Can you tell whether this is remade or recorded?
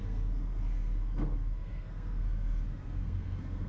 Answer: remade